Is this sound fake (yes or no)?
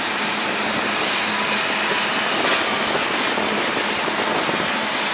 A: no